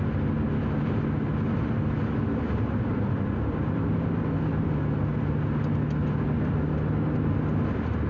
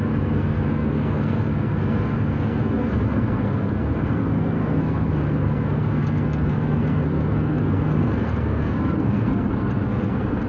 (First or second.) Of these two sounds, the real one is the first